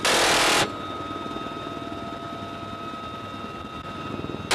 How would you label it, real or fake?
real